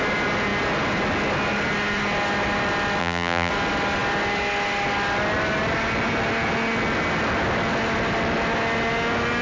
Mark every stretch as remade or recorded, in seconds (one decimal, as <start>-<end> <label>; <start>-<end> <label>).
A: 0.0-3.0 recorded; 3.0-3.5 remade; 3.5-9.4 recorded